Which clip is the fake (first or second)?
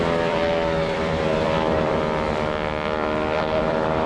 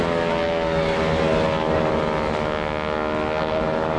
first